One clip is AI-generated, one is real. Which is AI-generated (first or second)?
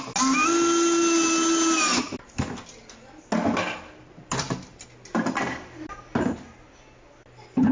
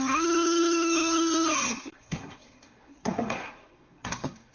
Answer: second